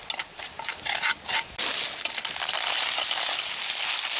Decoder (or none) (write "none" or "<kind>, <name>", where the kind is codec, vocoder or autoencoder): none